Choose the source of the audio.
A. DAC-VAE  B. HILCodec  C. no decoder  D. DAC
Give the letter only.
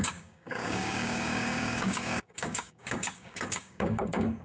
D